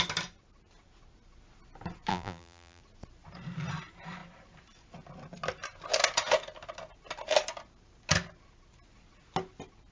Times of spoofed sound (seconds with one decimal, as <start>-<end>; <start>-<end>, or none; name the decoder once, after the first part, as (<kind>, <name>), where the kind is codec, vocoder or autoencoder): 2.1-2.8 (vocoder, BigVGAN v2)